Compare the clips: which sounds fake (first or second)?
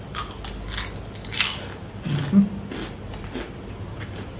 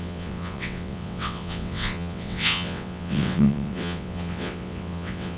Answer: second